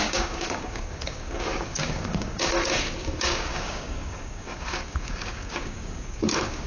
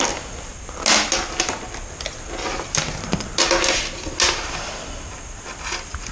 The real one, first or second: second